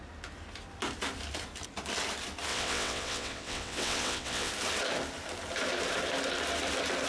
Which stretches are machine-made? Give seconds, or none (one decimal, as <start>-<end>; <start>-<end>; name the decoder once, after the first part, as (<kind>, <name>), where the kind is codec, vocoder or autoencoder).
2.5-4.5 (vocoder, WaveNeXt)